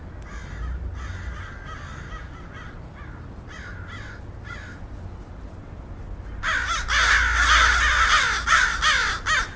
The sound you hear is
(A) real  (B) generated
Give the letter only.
A